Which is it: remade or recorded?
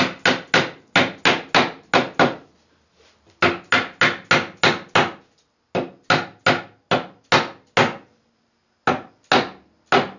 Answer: recorded